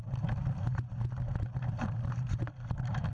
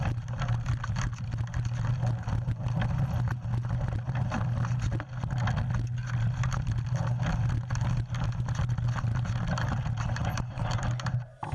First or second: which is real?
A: second